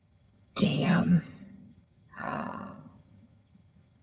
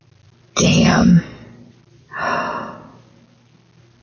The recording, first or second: second